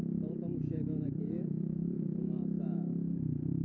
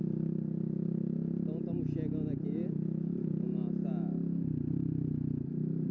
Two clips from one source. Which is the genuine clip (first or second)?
second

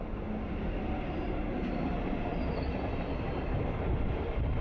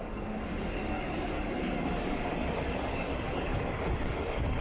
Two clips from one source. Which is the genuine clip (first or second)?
first